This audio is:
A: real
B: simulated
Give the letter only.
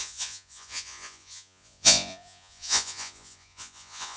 B